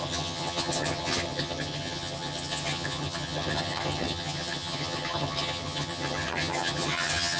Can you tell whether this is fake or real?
fake